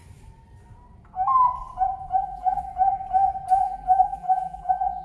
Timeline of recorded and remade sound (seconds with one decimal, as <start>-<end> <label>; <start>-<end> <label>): 0.0-2.2 recorded; 2.2-2.7 remade; 2.7-3.6 recorded; 3.6-5.0 remade

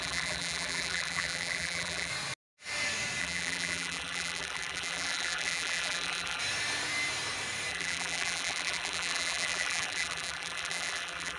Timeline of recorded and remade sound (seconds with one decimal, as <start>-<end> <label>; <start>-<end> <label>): 0.0-2.1 remade; 2.1-3.2 recorded; 3.2-6.4 remade; 6.4-7.7 recorded; 7.7-11.4 remade

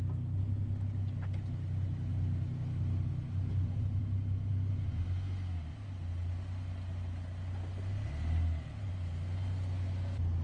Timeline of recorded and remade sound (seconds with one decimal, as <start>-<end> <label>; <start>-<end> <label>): 0.0-3.5 recorded; 3.5-4.0 remade; 4.0-10.4 recorded

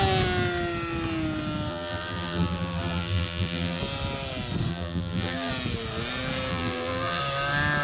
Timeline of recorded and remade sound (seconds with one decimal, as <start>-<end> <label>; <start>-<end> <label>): 0.0-1.7 recorded; 1.7-3.8 remade; 3.8-4.7 recorded; 4.7-5.5 remade; 5.5-6.5 recorded; 6.5-7.2 remade; 7.2-7.8 recorded

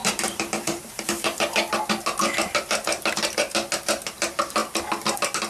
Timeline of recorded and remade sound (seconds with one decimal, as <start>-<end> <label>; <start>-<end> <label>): 0.0-1.1 remade; 1.1-5.5 recorded